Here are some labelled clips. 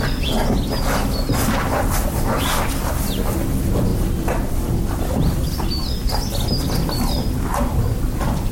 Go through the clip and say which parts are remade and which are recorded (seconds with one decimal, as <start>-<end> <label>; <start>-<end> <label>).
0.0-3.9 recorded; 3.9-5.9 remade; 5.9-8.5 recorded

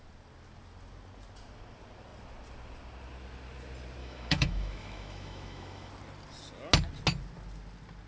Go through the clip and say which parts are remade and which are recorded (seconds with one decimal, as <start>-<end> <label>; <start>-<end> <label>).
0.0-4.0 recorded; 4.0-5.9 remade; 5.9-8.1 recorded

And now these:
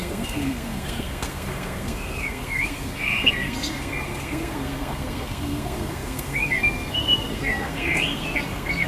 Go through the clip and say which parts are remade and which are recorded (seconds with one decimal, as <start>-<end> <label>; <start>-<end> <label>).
0.0-8.9 remade